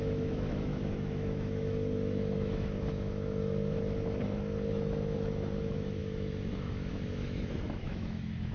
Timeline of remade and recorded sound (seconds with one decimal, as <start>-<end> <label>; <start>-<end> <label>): 0.0-3.5 remade; 3.5-4.7 recorded; 4.7-8.5 remade

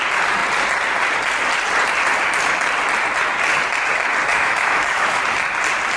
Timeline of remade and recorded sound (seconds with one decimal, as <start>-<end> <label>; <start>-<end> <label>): 0.0-4.3 recorded; 4.3-5.2 remade; 5.2-6.0 recorded

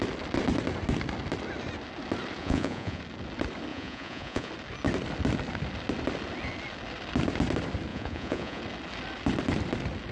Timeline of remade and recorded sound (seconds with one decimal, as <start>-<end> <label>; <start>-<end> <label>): 0.0-2.4 recorded; 2.4-3.0 remade; 3.0-3.7 recorded; 3.7-4.5 remade; 4.5-7.9 recorded; 7.9-8.6 remade; 8.6-10.1 recorded